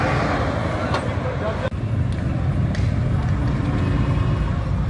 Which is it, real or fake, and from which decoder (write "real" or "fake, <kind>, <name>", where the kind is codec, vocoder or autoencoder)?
real